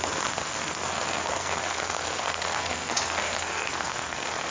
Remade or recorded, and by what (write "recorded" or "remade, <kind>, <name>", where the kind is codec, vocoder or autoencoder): remade, codec, SNAC